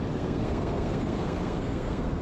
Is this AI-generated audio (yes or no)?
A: yes